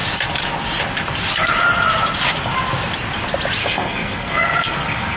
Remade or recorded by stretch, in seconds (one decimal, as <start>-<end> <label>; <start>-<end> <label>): 0.0-3.6 recorded; 3.6-5.2 remade

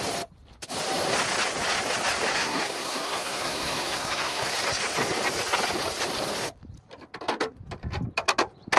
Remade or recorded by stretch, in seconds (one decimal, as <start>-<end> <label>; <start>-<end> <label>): 0.0-2.3 recorded; 2.3-4.5 remade; 4.5-8.8 recorded

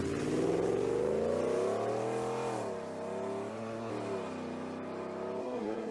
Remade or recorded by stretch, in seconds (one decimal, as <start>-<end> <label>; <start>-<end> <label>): 0.0-3.5 recorded; 3.5-3.9 remade; 3.9-5.4 recorded; 5.4-5.9 remade

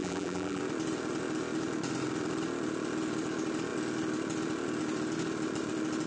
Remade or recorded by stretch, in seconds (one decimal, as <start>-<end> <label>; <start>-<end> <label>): 0.0-0.6 remade; 0.6-6.1 recorded